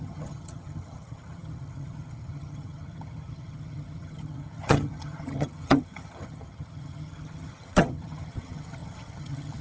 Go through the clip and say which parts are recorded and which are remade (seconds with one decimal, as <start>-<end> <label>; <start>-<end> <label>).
0.0-9.6 remade